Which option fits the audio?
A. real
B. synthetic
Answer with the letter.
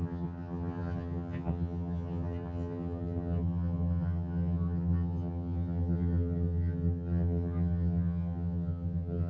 B